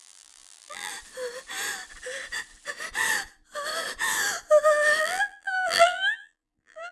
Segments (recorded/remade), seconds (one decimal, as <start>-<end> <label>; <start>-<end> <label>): 0.0-0.9 remade; 0.9-5.0 recorded; 5.0-6.9 remade